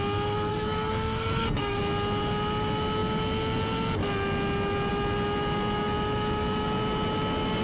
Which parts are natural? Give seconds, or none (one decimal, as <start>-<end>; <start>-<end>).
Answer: 0.0-0.5; 1.8-7.6